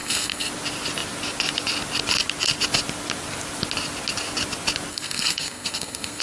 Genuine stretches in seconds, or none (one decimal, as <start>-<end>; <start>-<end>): 0.5-4.9